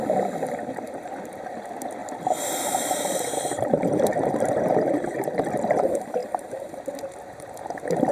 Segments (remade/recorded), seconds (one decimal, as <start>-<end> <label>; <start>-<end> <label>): 0.0-2.0 recorded; 2.0-4.4 remade; 4.4-8.1 recorded